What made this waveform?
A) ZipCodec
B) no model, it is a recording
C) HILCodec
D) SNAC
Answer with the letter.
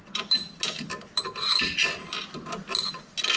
B